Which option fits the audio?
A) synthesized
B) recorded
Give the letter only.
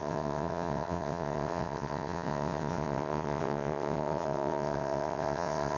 A